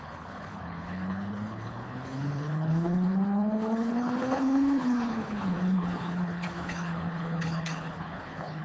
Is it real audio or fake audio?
fake